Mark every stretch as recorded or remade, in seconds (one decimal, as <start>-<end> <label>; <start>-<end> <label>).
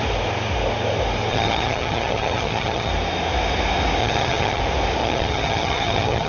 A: 0.0-1.3 recorded; 1.3-2.9 remade; 2.9-4.0 recorded; 4.0-4.6 remade; 4.6-5.0 recorded; 5.0-6.3 remade